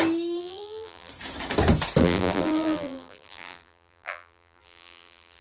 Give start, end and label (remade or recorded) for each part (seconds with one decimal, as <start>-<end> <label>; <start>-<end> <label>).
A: 0.0-0.4 recorded; 0.4-1.1 remade; 1.1-2.0 recorded; 2.0-5.4 remade